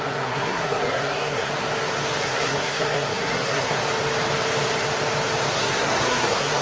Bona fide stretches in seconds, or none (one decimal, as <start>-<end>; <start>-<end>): 1.5-2.2; 3.8-5.5